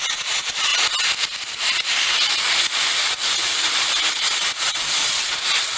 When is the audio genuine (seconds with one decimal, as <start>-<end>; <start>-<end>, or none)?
0.7-4.1